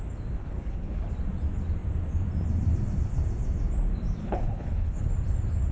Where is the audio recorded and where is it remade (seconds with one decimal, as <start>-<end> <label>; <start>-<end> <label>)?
0.0-0.4 recorded; 0.4-1.1 remade; 1.1-4.2 recorded; 4.2-5.1 remade; 5.1-5.7 recorded